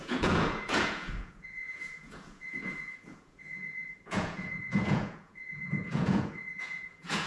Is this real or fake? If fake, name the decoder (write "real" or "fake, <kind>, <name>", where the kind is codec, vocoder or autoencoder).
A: fake, vocoder, Vocos